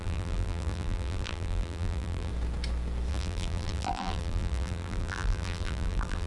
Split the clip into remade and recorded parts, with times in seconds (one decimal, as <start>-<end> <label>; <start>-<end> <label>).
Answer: 0.0-2.3 remade; 2.3-3.1 recorded; 3.1-6.3 remade